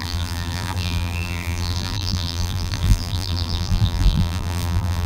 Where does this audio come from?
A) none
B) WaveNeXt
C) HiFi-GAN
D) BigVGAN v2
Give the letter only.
D